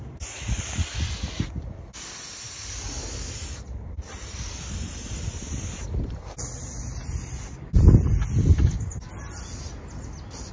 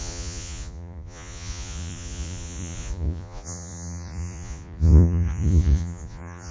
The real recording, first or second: first